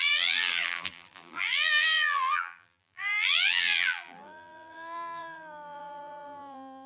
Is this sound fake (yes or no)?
yes